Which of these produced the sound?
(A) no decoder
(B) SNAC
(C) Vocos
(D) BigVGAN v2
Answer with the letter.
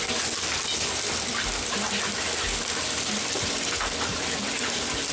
A